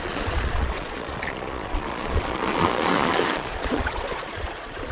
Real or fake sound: fake